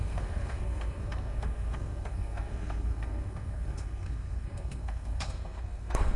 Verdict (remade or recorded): remade